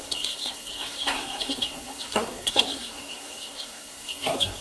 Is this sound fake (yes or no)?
yes